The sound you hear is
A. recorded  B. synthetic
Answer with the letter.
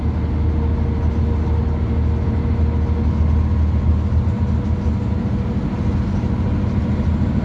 A